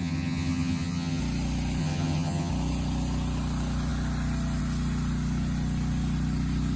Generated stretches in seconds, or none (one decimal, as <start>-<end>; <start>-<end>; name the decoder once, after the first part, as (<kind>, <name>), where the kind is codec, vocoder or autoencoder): 0.0-1.2 (vocoder, HiFi-GAN); 1.8-2.5